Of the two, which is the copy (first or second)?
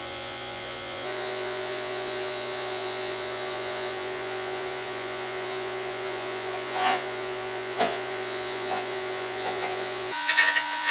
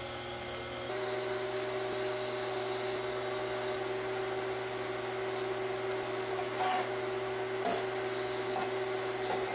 first